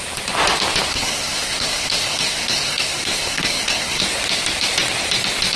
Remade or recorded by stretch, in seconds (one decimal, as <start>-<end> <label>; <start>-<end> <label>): 0.0-0.9 recorded; 0.9-4.0 remade; 4.0-5.6 recorded